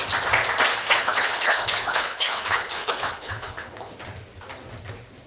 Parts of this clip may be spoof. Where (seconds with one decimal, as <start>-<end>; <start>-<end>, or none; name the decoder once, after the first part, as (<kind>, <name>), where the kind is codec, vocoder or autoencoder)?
0.7-3.9 (codec, HILCodec)